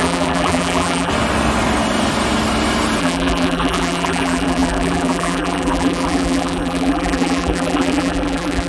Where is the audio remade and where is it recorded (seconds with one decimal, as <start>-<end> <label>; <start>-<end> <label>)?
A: 0.0-1.1 remade; 1.1-3.0 recorded; 3.0-8.7 remade